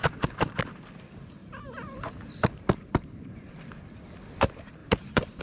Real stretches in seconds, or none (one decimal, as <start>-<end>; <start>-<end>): 0.6-1.4; 3.5-4.8